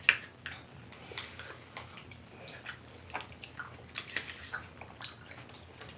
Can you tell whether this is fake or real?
real